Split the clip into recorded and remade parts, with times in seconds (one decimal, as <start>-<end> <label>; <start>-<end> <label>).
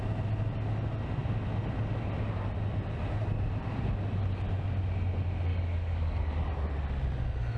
0.0-5.5 recorded; 5.5-6.3 remade; 6.3-7.6 recorded